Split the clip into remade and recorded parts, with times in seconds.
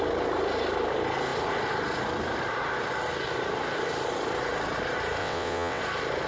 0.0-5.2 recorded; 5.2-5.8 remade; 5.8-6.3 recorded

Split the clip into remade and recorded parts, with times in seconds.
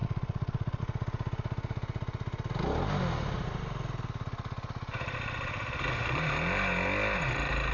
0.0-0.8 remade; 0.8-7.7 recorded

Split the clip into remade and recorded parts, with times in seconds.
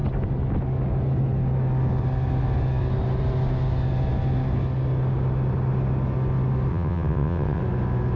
0.0-6.7 recorded; 6.7-7.6 remade; 7.6-8.2 recorded